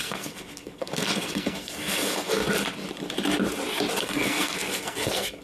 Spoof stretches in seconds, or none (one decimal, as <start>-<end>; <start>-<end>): 0.0-2.4; 4.0-5.4